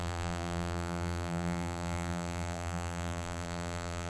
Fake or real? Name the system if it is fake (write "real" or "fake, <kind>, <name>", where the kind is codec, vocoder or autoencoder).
fake, vocoder, BigVGAN v2